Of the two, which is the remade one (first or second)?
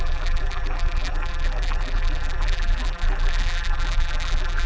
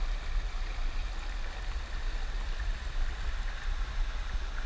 first